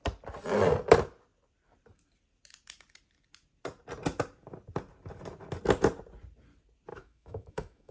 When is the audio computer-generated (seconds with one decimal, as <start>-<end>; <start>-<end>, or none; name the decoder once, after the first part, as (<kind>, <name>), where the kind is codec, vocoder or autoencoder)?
6.9-7.9 (autoencoder, DAC-VAE)